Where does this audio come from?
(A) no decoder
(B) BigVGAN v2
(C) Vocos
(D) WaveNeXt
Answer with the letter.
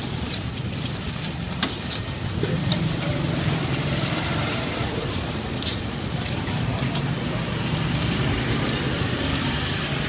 B